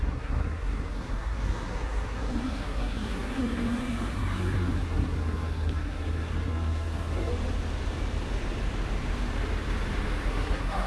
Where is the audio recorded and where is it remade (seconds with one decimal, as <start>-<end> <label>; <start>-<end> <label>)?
0.0-7.3 remade; 7.3-10.3 recorded; 10.3-10.9 remade